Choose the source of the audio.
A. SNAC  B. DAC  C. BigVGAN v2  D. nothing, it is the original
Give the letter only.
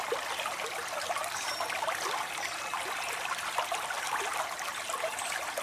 D